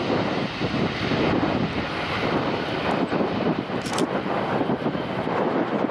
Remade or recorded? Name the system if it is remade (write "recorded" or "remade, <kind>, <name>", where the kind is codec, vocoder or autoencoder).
recorded